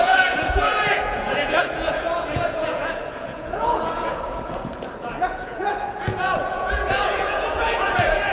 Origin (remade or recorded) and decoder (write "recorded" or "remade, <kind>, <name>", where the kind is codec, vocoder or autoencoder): remade, vocoder, Vocos